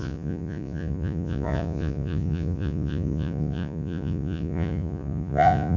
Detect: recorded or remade remade